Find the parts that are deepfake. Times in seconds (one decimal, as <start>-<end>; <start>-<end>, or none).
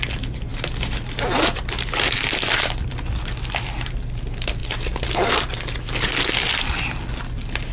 0.5-3.9; 4.6-7.2